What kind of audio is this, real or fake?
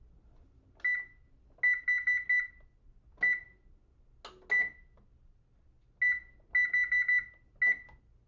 real